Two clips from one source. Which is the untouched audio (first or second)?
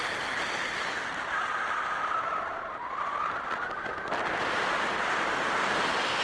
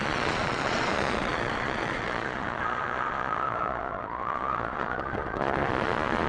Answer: first